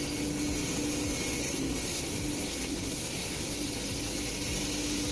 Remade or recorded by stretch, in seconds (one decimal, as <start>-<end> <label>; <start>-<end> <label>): 0.0-1.4 recorded; 1.4-2.1 remade; 2.1-2.5 recorded; 2.5-3.5 remade; 3.5-5.1 recorded